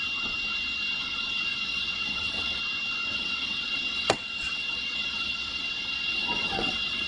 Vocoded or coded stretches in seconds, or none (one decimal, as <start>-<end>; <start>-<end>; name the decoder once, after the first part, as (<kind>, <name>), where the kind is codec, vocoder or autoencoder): 1.0-2.6 (vocoder, WaveNeXt); 3.1-7.1